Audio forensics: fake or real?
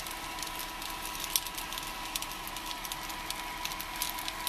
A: real